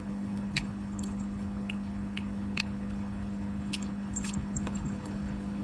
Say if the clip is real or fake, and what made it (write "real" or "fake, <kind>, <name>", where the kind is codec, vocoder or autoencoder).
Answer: fake, codec, HILCodec